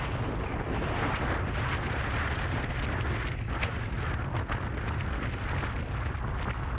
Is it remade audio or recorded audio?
recorded